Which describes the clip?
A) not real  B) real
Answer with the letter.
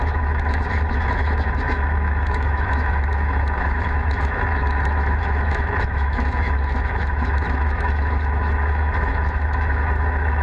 A